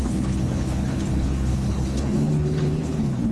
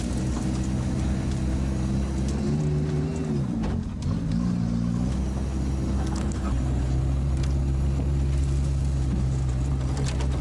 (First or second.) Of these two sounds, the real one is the second